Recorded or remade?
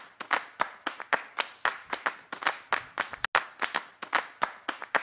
recorded